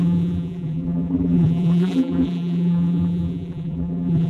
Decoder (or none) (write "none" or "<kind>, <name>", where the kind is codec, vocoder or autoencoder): vocoder, BigVGAN v2